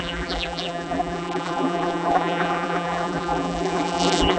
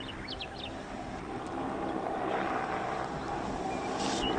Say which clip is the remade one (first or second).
first